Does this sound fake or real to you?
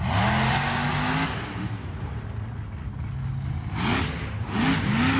real